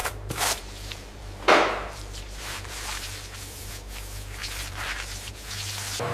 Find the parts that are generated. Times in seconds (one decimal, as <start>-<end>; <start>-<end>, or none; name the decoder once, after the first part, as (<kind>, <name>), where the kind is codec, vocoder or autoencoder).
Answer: 0.0-3.7 (vocoder, BigVGAN v2); 4.4-5.3